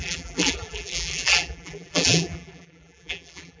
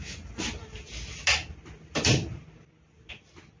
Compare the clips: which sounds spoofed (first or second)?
first